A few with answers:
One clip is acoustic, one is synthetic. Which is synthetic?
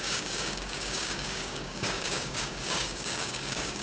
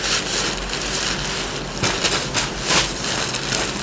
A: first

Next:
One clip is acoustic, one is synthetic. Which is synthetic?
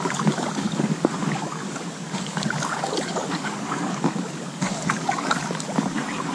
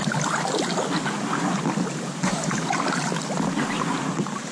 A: first